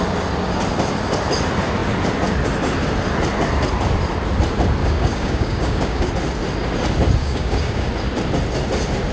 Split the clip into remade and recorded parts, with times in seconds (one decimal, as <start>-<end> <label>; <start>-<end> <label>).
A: 0.0-4.8 recorded; 4.8-6.1 remade; 6.1-7.2 recorded; 7.2-7.9 remade; 7.9-9.1 recorded